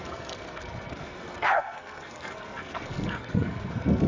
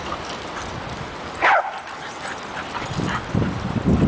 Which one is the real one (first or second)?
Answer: second